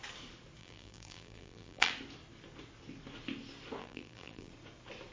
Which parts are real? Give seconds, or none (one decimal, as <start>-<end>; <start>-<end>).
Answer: 0.0-0.6; 1.9-3.8; 4.5-5.1